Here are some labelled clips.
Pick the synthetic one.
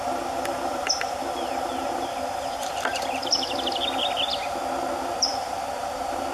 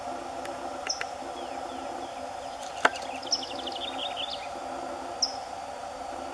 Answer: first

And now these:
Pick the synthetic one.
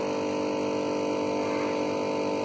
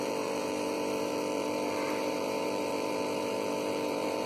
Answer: second